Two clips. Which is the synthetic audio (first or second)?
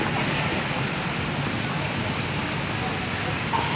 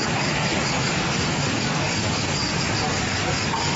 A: second